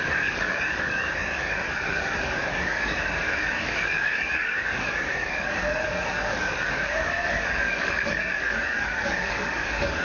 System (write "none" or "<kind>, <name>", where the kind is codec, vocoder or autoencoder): codec, DAC